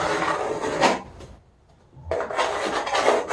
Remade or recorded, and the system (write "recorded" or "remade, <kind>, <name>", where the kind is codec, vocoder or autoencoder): recorded